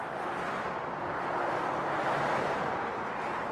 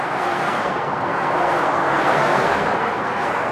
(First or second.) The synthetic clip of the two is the second